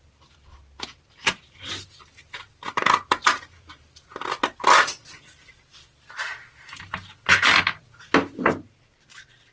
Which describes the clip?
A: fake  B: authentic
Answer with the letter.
B